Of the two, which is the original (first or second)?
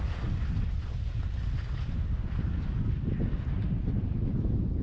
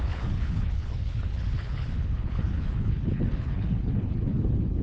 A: first